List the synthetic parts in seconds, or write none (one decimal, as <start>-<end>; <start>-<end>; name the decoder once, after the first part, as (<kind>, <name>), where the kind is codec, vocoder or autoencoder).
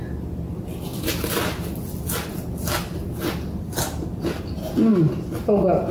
none